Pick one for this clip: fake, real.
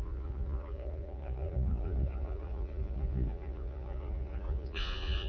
fake